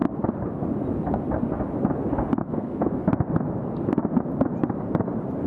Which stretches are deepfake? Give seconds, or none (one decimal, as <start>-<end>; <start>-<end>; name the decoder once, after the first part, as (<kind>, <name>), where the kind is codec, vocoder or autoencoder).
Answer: 2.4-3.0 (codec, SNAC)